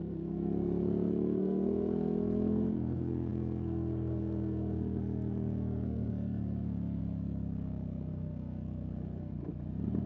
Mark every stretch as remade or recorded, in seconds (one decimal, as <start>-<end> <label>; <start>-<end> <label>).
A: 0.0-9.3 remade; 9.3-10.1 recorded